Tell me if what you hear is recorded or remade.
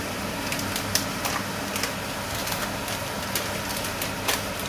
recorded